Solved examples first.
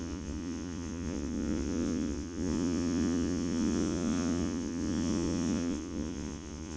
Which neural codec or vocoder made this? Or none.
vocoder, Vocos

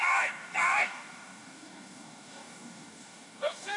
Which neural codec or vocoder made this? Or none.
codec, DAC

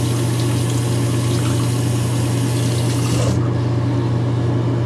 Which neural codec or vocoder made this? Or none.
none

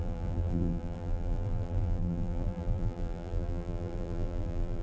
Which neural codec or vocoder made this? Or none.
vocoder, BigVGAN v2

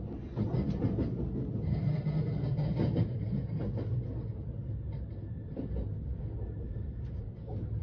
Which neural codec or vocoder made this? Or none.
none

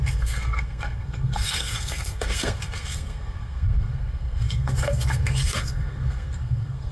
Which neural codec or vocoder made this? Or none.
codec, SNAC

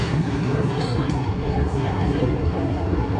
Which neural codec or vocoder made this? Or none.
codec, SNAC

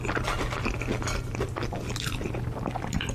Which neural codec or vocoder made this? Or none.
none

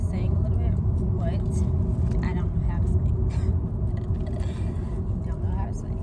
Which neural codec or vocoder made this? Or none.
none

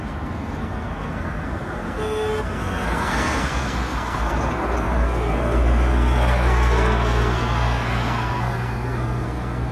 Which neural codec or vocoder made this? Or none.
codec, SNAC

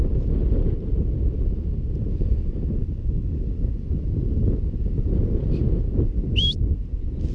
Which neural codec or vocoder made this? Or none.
none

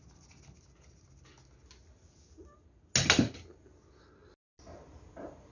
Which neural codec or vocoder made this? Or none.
none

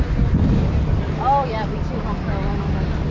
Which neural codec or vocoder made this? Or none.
none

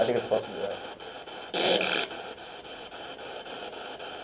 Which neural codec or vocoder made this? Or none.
none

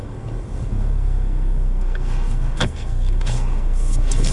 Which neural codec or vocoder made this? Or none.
codec, SNAC